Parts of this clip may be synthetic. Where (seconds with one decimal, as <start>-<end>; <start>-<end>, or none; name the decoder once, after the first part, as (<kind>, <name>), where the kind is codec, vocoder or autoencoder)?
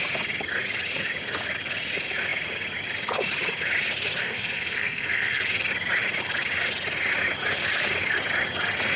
4.2-5.4 (codec, SNAC)